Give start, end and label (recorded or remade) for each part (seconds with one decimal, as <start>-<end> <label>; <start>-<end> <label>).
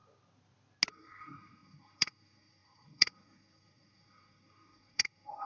0.0-0.9 recorded; 0.9-5.5 remade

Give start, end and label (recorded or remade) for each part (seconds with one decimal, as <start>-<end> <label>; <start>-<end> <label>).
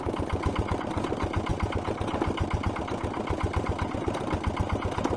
0.0-5.2 recorded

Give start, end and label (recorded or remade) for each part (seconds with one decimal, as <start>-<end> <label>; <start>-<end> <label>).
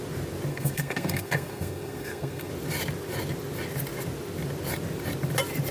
0.0-0.5 recorded; 0.5-2.5 remade; 2.5-5.7 recorded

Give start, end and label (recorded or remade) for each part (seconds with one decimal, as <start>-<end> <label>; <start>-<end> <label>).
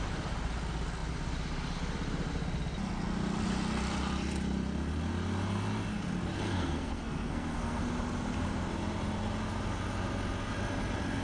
0.0-6.3 recorded; 6.3-7.8 remade; 7.8-11.2 recorded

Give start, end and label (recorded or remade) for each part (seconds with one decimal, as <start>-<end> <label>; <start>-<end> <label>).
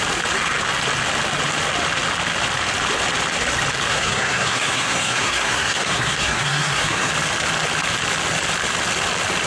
0.0-3.9 recorded; 3.9-7.1 remade; 7.1-9.5 recorded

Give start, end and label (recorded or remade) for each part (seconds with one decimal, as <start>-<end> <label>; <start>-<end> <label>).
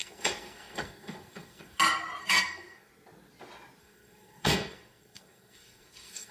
0.0-1.8 remade; 1.8-2.2 recorded; 2.2-2.9 remade; 2.9-3.8 recorded; 3.8-6.3 remade